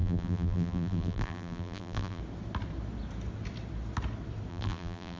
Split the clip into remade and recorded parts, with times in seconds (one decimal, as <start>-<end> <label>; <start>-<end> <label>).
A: 0.0-2.2 remade; 2.2-4.5 recorded; 4.5-5.2 remade